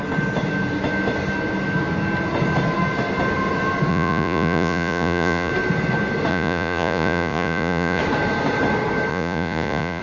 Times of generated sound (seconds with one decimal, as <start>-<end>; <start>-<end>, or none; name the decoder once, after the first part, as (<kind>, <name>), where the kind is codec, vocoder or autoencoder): 3.9-5.5 (vocoder, Vocos); 6.3-8.0; 9.1-10.0

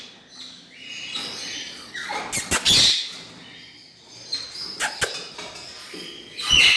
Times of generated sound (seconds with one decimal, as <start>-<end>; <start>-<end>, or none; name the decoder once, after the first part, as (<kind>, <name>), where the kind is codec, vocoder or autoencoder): 1.2-2.2 (vocoder, Vocos); 5.8-6.8

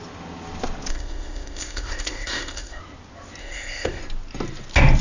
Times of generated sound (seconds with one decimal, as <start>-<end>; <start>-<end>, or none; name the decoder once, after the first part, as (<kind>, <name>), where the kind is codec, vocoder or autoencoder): 0.9-2.8 (codec, ZipCodec); 3.4-4.0